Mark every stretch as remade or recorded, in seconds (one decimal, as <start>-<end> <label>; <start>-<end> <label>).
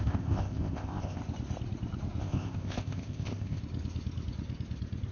0.0-1.2 remade; 1.2-2.2 recorded; 2.2-3.6 remade; 3.6-5.1 recorded